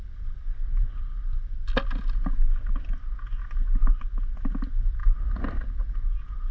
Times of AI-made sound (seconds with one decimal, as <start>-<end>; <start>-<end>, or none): none

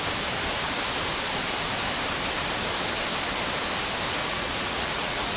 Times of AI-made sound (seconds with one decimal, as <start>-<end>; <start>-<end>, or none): 4.2-5.4

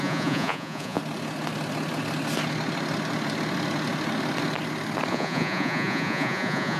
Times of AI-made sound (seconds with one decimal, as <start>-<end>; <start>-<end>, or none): 0.0-1.0; 5.1-6.8

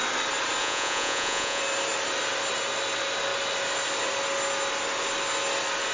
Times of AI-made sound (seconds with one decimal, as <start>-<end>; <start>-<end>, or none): 0.6-1.6

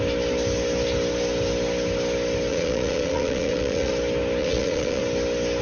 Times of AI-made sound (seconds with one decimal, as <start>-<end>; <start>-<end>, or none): 2.5-3.9; 4.4-5.0

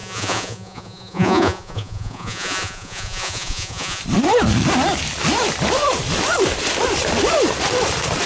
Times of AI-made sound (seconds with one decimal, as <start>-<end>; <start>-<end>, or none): 0.0-4.0